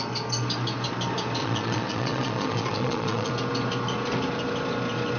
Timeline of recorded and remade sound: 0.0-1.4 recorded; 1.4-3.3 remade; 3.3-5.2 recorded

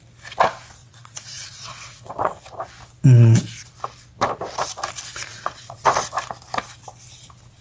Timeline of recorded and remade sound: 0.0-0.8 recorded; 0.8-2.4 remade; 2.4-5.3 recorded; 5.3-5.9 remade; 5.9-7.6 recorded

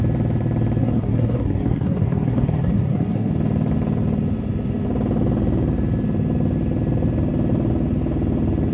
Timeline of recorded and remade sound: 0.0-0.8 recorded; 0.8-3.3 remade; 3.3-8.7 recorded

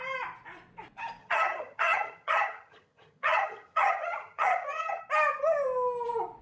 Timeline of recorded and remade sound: 0.0-1.2 recorded; 1.2-5.0 remade; 5.0-6.4 recorded

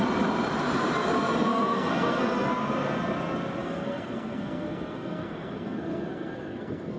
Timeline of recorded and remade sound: 0.0-1.5 recorded; 1.5-2.5 remade; 2.5-3.6 recorded; 3.6-7.0 remade

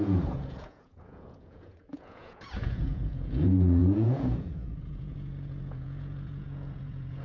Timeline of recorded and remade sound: 0.0-7.2 remade